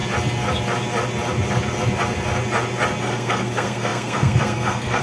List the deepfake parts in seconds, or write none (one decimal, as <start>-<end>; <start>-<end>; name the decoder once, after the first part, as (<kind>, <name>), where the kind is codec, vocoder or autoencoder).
3.0-5.0 (codec, SNAC)